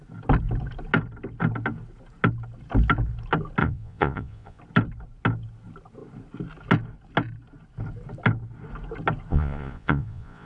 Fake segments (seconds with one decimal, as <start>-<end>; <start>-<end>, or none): 3.6-4.6; 9.3-10.5